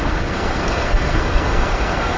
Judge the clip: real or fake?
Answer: fake